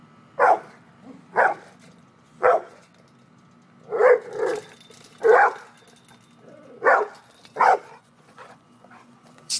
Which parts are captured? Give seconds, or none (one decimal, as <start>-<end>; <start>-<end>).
0.0-1.9; 2.9-7.6